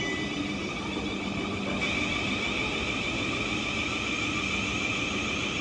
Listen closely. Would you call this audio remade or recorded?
recorded